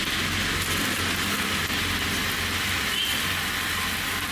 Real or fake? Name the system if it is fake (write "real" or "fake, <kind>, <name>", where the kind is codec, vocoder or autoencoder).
real